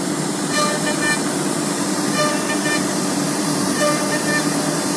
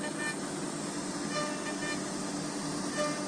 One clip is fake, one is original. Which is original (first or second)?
second